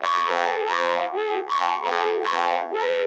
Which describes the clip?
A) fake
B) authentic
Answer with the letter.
A